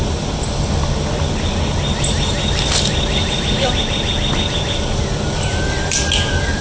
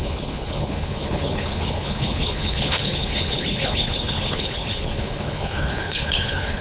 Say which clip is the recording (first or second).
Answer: first